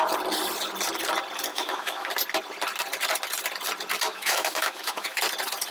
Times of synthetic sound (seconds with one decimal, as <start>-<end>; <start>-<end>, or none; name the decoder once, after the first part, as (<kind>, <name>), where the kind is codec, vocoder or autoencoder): 1.5-2.1 (autoencoder, DAC-VAE); 4.1-5.2